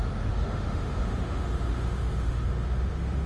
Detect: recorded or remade remade